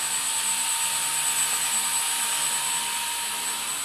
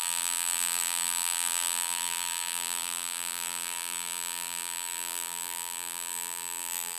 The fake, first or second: second